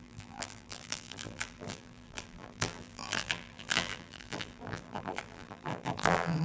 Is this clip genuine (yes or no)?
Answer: no